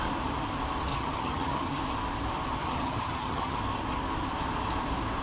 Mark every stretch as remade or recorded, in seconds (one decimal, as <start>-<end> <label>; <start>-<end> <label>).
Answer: 0.0-0.9 recorded; 0.9-1.8 remade; 1.8-2.6 recorded; 2.6-3.6 remade; 3.6-5.2 recorded